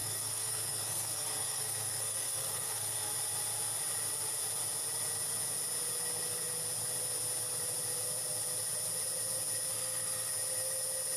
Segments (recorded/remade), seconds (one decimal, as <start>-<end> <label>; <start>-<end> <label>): 0.0-3.1 remade; 3.1-9.7 recorded; 9.7-10.3 remade; 10.3-11.2 recorded